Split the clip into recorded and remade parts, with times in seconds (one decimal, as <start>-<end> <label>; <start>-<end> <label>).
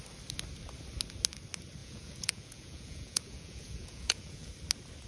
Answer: 0.0-1.8 recorded; 1.8-4.5 remade; 4.5-5.1 recorded